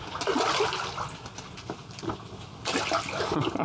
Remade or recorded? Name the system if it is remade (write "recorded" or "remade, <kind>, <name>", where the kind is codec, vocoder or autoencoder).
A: recorded